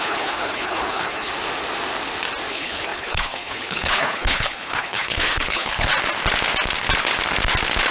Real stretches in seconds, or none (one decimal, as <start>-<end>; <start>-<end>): 1.3-2.5; 5.9-7.9